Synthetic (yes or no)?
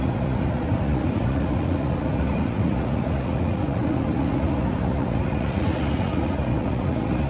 yes